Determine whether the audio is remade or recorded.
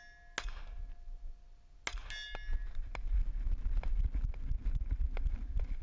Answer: recorded